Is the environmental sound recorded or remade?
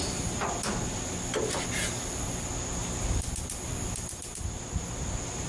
recorded